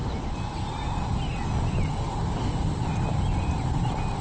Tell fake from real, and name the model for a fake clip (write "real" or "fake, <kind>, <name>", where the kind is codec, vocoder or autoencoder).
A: real